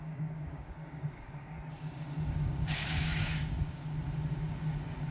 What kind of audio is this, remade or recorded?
remade